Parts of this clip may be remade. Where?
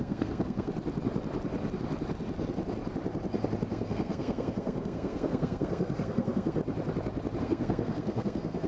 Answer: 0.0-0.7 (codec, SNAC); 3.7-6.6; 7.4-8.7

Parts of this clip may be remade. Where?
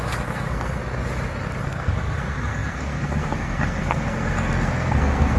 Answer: 0.0-0.8 (codec, SNAC); 1.6-5.4